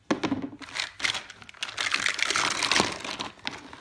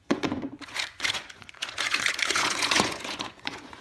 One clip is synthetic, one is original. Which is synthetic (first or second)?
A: second